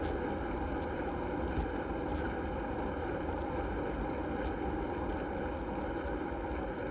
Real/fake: real